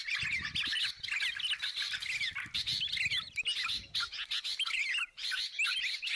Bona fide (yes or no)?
yes